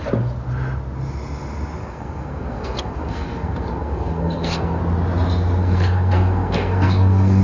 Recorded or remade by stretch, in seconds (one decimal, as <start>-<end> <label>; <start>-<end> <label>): 0.0-1.8 recorded; 1.8-4.8 remade; 4.8-5.6 recorded; 5.6-7.4 remade